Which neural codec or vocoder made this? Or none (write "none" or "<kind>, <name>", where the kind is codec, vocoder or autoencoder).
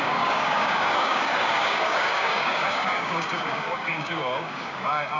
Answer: codec, DAC